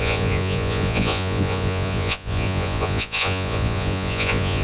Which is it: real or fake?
fake